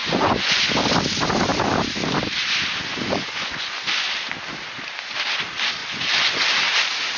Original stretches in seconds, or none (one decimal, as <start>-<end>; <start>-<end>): 0.7-2.9; 3.9-5.8; 6.4-7.2